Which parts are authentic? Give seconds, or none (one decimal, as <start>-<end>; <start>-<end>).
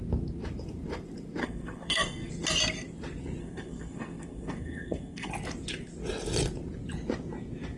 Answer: 0.0-1.4; 2.3-3.4; 5.3-7.8